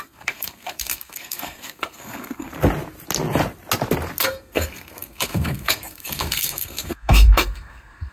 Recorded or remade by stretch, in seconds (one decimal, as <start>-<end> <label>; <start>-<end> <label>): 0.0-2.5 remade; 2.5-4.2 recorded; 4.2-8.1 remade